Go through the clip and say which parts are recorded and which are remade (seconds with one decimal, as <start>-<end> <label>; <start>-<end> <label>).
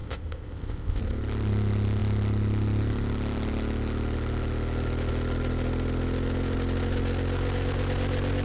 0.0-1.0 remade; 1.0-8.4 recorded